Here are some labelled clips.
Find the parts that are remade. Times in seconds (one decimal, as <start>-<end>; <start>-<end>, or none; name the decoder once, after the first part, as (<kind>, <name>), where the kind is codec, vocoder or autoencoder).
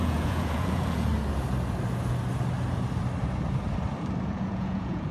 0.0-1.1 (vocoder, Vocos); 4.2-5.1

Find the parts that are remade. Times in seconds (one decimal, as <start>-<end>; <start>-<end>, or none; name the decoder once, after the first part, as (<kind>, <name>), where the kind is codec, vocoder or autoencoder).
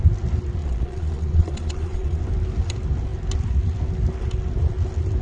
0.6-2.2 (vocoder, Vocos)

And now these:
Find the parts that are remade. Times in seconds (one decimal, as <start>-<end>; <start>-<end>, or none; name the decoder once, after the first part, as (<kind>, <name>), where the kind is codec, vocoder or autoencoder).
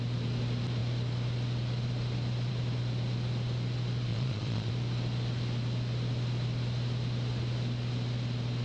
4.1-4.7 (vocoder, Vocos)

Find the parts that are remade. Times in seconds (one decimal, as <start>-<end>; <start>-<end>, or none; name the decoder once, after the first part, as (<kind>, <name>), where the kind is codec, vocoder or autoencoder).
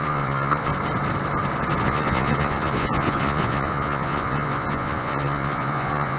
0.0-0.7 (vocoder, Vocos); 1.8-6.2